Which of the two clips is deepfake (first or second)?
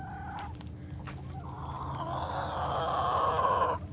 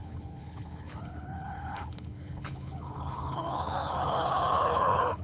second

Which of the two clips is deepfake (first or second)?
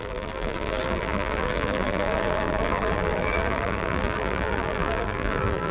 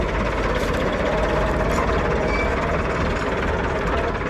first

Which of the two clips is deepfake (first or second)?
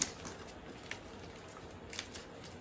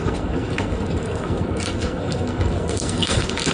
second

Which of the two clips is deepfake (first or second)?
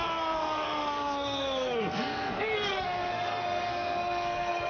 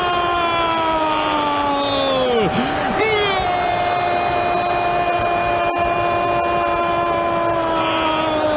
first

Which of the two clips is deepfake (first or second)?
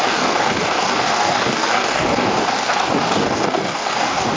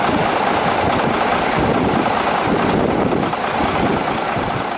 first